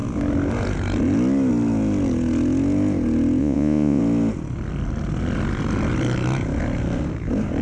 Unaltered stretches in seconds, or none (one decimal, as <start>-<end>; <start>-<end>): 0.0-3.4; 4.0-7.6